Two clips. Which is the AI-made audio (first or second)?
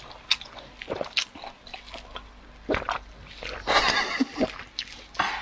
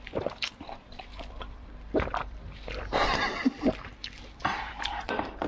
second